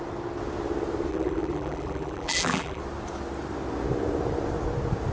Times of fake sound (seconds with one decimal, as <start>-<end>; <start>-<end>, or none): 1.1-2.8